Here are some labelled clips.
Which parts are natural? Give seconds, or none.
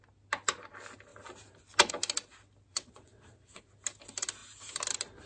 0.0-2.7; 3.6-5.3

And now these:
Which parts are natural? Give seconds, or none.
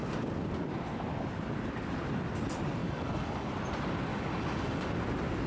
0.0-2.8; 3.5-4.1; 4.9-5.5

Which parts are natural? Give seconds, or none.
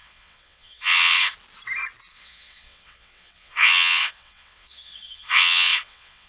1.3-2.1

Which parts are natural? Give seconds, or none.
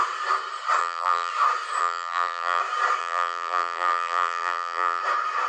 0.0-0.8; 1.3-1.8; 2.6-3.0; 5.0-5.5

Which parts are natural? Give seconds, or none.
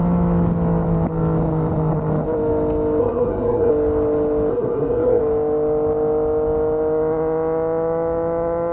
0.0-3.0; 3.7-4.5; 5.2-8.7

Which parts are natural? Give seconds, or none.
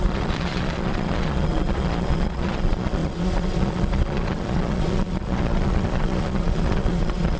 none